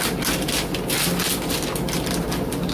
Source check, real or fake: real